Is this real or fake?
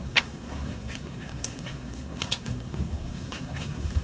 fake